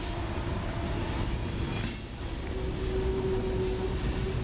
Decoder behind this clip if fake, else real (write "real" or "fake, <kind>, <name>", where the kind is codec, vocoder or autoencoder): real